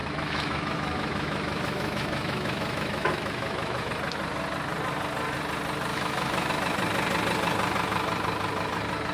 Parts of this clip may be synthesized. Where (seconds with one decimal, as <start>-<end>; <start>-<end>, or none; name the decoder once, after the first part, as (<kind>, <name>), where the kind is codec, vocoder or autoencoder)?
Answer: 0.0-3.9 (autoencoder, DAC-VAE); 5.9-6.5